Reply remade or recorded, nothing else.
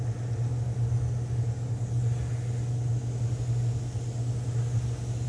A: recorded